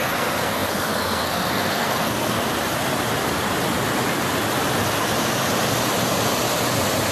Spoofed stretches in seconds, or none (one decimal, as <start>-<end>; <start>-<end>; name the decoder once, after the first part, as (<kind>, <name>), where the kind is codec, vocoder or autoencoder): 0.0-2.4 (codec, SNAC)